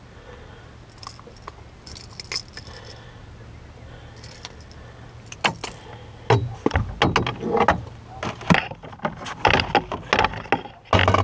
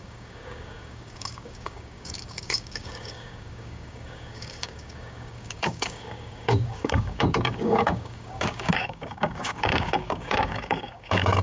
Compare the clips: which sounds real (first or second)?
first